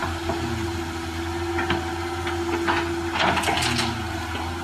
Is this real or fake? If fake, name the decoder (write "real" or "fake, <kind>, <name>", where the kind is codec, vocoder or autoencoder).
real